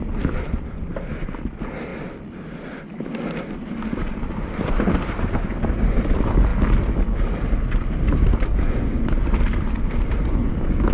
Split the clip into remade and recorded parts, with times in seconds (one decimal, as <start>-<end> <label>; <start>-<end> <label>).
0.0-10.9 recorded